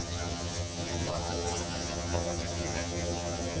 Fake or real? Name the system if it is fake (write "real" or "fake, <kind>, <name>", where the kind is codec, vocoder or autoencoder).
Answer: fake, vocoder, HiFi-GAN